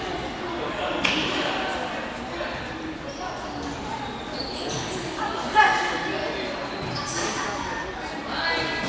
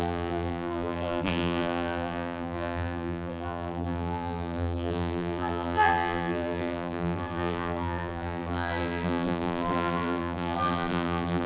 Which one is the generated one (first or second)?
second